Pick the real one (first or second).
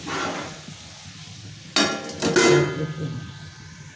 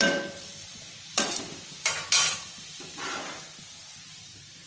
first